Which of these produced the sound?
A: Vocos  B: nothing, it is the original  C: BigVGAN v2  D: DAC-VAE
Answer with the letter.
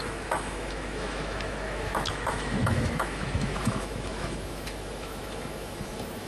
D